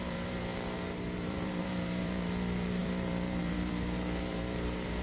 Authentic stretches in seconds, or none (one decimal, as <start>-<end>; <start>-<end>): none